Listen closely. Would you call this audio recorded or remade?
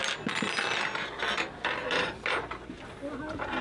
recorded